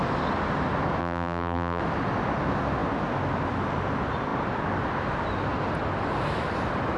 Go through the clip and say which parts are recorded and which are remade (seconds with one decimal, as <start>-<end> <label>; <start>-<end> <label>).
0.0-1.0 recorded; 1.0-1.8 remade; 1.8-7.0 recorded